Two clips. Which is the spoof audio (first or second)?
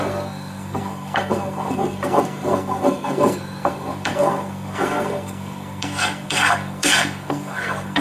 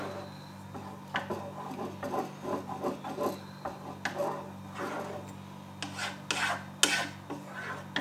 first